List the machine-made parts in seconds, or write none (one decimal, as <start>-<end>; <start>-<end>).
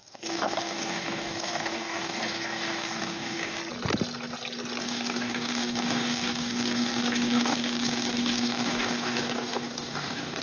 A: 0.0-3.6; 4.8-10.4